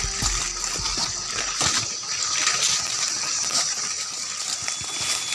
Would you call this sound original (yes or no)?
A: yes